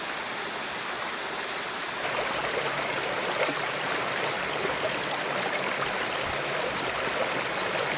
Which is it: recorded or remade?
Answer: recorded